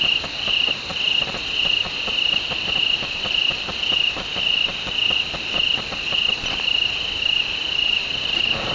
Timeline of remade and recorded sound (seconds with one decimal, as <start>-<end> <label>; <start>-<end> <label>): 0.0-8.7 recorded